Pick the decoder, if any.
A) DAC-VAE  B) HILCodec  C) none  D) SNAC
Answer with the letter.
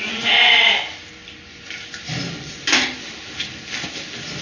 C